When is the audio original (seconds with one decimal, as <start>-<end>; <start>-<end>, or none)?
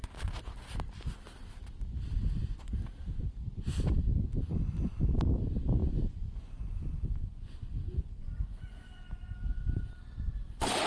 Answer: 0.0-5.8; 9.9-10.9